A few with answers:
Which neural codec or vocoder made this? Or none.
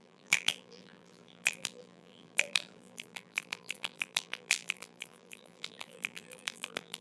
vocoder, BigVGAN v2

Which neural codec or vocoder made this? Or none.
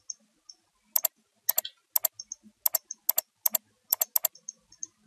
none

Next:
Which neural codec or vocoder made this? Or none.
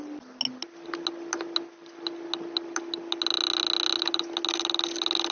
none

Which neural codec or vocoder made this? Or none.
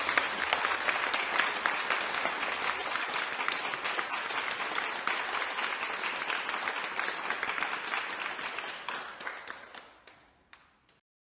vocoder, BigVGAN v2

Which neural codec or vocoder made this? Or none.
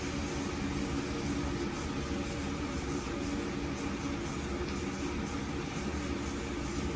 none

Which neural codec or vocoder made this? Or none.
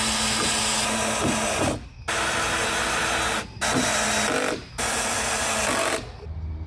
none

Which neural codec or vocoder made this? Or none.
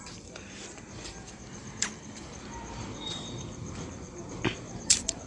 vocoder, BigVGAN v2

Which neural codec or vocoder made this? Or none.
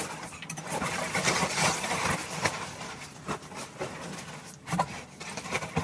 vocoder, BigVGAN v2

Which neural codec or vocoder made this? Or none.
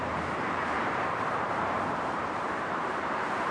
vocoder, BigVGAN v2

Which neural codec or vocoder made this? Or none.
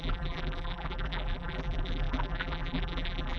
vocoder, BigVGAN v2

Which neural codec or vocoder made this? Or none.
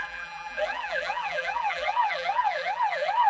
vocoder, BigVGAN v2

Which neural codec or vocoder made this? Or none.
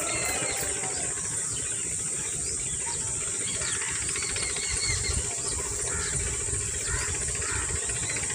none